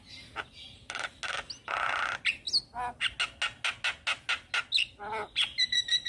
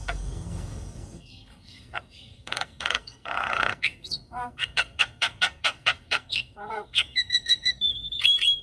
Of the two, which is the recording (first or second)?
first